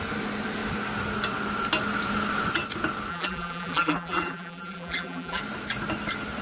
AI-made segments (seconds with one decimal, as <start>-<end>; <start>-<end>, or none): 3.1-5.4